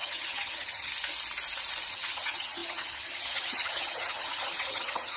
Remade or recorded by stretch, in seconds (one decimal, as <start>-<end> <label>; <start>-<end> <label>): 0.0-0.9 remade; 0.9-1.9 recorded; 1.9-5.2 remade